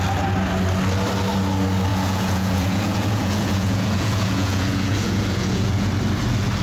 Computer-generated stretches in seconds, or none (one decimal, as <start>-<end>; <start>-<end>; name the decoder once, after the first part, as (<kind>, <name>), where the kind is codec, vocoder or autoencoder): 1.9-5.9 (vocoder, Vocos)